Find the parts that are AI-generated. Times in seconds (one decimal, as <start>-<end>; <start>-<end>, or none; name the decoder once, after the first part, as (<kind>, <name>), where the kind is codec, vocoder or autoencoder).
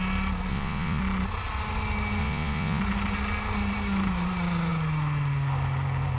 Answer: 0.5-1.0 (vocoder, Vocos); 2.2-2.8